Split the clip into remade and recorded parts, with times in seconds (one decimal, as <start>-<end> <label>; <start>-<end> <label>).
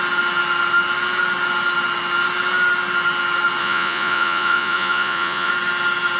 0.0-3.6 recorded; 3.6-5.5 remade; 5.5-6.2 recorded